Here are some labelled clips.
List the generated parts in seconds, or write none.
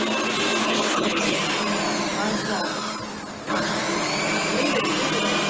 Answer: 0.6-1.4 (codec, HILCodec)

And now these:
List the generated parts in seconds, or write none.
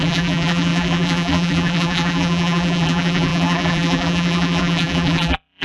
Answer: 0.0-5.6 (vocoder, BigVGAN v2)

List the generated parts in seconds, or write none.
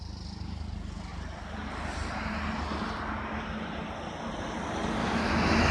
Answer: 5.0-5.7 (autoencoder, DAC-VAE)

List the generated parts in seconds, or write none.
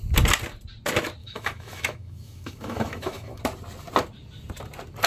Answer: 1.2-3.4 (autoencoder, DAC-VAE)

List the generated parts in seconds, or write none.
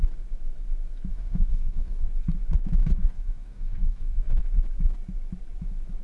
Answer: 1.1-2.1 (codec, DAC); 2.8-4.4